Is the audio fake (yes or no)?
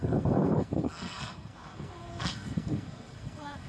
yes